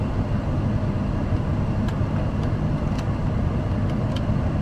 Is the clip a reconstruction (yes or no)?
no